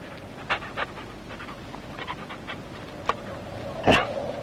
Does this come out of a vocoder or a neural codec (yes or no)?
no